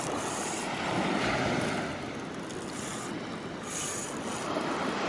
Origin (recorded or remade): recorded